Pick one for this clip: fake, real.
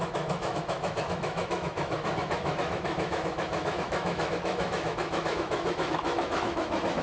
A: fake